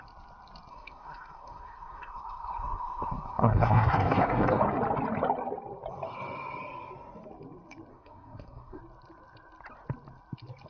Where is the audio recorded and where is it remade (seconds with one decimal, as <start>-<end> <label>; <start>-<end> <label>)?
0.0-0.7 recorded; 0.7-4.6 remade; 4.6-7.9 recorded; 7.9-8.8 remade; 8.8-10.7 recorded